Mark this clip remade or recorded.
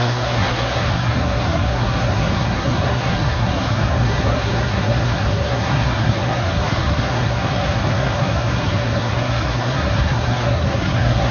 remade